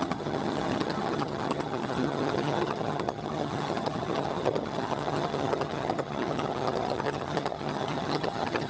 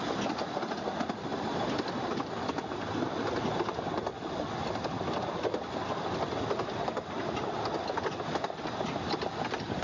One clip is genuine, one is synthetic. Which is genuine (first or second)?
second